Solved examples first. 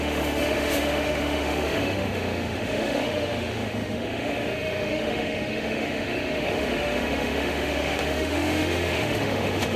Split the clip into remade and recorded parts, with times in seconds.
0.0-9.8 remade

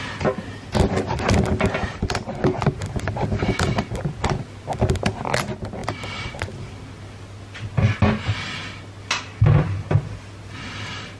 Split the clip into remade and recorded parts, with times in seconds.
0.0-11.2 recorded

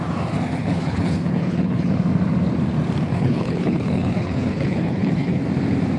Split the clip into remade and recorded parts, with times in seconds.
0.0-0.6 recorded; 0.6-1.9 remade; 1.9-3.1 recorded; 3.1-5.4 remade; 5.4-6.0 recorded

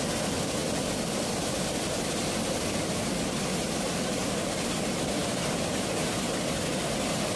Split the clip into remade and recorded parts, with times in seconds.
0.0-7.4 recorded

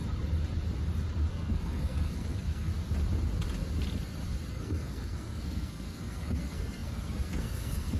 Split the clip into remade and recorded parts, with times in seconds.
0.0-1.3 recorded; 1.3-2.7 remade; 2.7-4.5 recorded; 4.5-8.0 remade

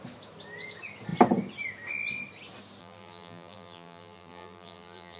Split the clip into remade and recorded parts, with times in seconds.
0.0-2.8 recorded; 2.8-5.2 remade

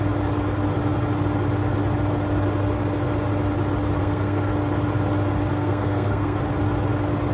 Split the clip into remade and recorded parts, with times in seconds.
0.0-4.0 recorded; 4.0-4.5 remade; 4.5-5.5 recorded; 5.5-6.4 remade; 6.4-7.3 recorded

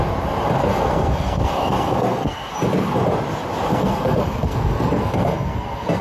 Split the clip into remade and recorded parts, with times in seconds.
0.0-0.6 recorded; 0.6-2.5 remade; 2.5-3.7 recorded; 3.7-6.0 remade